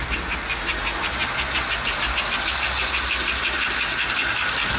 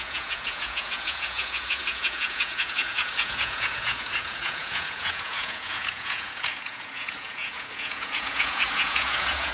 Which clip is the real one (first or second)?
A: first